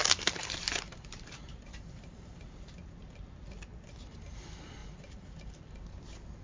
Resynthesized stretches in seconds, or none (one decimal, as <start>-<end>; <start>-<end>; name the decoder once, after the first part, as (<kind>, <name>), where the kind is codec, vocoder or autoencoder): 0.0-3.2 (vocoder, BigVGAN v2); 4.8-5.7